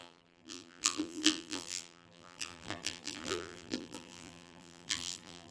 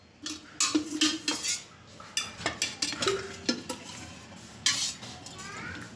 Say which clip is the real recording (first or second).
second